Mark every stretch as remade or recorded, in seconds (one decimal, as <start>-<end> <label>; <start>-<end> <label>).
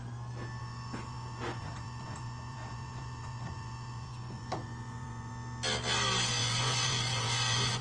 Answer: 0.0-0.6 recorded; 0.6-5.3 remade; 5.3-6.4 recorded; 6.4-7.8 remade